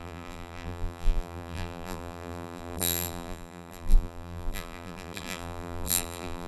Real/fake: fake